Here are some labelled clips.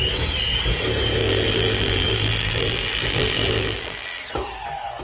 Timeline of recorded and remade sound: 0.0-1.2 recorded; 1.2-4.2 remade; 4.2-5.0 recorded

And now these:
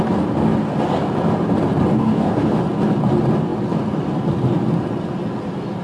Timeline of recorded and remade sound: 0.0-1.9 recorded; 1.9-2.6 remade; 2.6-5.8 recorded

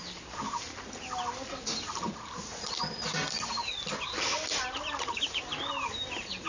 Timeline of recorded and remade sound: 0.0-2.0 recorded; 2.0-2.5 remade; 2.5-6.5 recorded

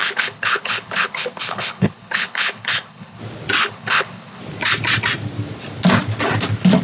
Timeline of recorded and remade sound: 0.0-3.2 remade; 3.2-3.6 recorded; 3.6-4.4 remade; 4.4-6.8 recorded

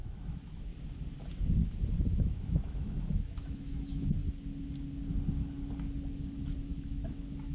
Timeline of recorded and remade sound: 0.0-0.7 remade; 0.7-2.0 recorded; 2.0-4.2 remade; 4.2-6.6 recorded; 6.6-7.5 remade

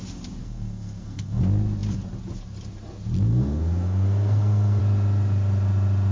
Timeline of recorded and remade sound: 0.0-0.4 recorded; 0.4-1.4 remade; 1.4-3.3 recorded; 3.3-4.8 remade; 4.8-6.1 recorded